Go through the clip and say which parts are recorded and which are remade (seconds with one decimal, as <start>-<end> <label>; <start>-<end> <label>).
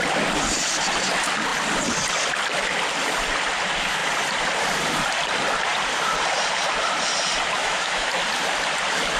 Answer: 0.0-7.6 recorded; 7.6-8.1 remade; 8.1-9.2 recorded